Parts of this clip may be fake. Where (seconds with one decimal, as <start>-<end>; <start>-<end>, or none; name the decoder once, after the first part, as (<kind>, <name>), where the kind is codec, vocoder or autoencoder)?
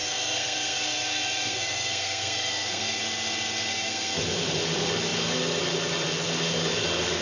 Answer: 0.0-3.0 (codec, SNAC); 3.7-4.2